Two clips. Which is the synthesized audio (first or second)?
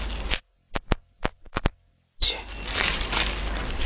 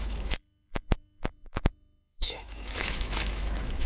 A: second